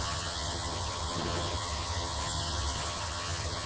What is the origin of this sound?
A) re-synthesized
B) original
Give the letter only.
A